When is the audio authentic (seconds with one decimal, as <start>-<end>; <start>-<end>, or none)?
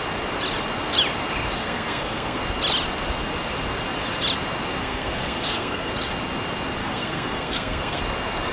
0.0-1.6; 2.4-4.8; 5.9-6.8; 8.0-8.5